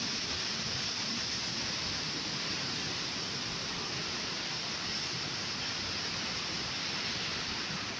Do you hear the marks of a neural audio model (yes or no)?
yes